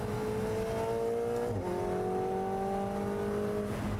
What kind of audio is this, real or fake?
real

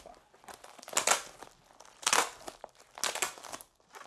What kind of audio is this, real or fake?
real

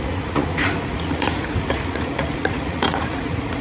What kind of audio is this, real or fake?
fake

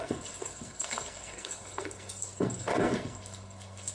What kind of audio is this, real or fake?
fake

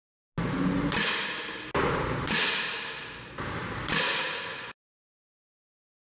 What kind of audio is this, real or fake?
real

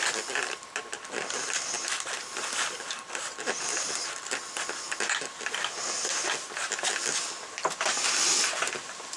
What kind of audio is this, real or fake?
real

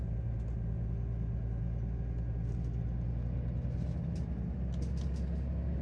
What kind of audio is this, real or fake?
real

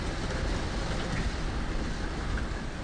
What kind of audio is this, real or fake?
real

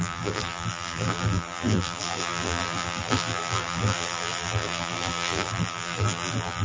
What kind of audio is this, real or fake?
fake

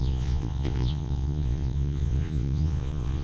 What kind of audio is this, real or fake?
fake